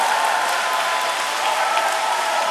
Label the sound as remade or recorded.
recorded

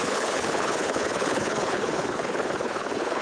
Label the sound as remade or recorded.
remade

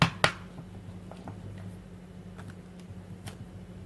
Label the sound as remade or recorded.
recorded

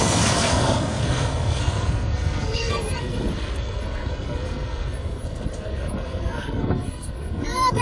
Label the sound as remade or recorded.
remade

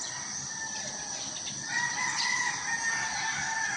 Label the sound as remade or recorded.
recorded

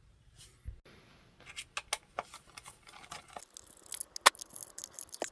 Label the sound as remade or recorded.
recorded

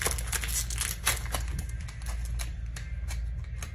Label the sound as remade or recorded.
recorded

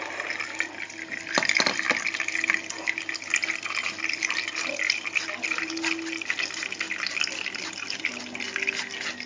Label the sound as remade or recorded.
recorded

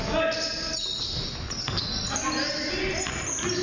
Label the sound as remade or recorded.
recorded